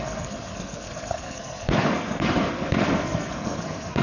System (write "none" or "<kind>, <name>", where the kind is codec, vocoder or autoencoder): codec, SNAC